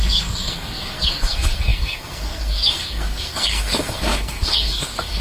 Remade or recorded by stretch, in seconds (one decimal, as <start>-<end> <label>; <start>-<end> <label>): 0.0-5.2 remade